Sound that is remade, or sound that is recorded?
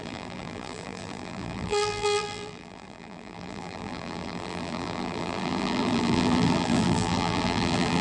remade